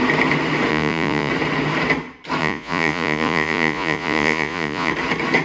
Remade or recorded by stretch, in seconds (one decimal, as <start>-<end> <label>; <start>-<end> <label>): 0.0-0.7 recorded; 0.7-1.3 remade; 1.3-2.4 recorded; 2.4-4.9 remade; 4.9-5.4 recorded